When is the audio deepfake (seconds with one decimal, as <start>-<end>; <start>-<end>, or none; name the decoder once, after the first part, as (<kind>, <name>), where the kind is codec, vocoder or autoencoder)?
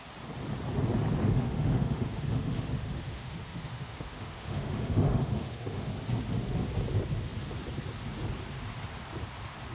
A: 1.2-5.9 (autoencoder, DAC-VAE)